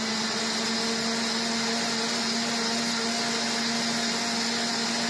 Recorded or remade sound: recorded